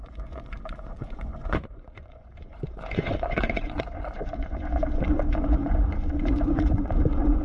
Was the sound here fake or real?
fake